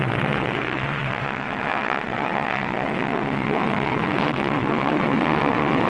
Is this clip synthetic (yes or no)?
yes